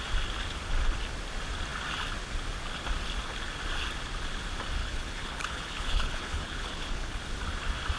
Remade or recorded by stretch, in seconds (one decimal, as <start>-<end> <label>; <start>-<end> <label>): 0.0-4.8 recorded; 4.8-7.2 remade; 7.2-8.0 recorded